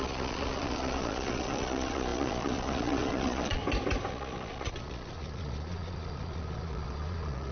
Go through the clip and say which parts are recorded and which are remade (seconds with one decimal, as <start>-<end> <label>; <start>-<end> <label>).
0.0-3.6 remade; 3.6-4.1 recorded; 4.1-7.5 remade